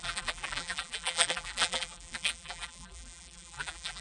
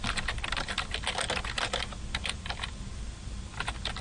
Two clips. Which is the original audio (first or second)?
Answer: second